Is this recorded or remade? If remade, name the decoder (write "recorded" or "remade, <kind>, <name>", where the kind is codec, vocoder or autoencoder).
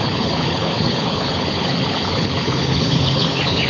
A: remade, codec, HILCodec